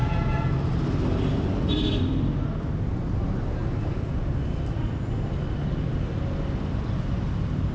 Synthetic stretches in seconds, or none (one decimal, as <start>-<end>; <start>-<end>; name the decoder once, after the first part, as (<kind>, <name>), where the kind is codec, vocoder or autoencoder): none